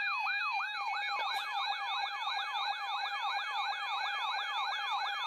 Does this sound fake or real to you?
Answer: fake